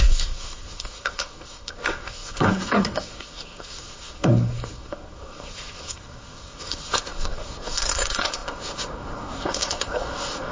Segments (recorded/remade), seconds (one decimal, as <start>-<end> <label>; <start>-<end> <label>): 0.0-10.5 remade